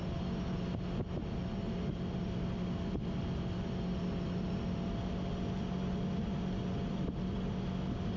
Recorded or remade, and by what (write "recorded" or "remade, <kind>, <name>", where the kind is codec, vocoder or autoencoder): recorded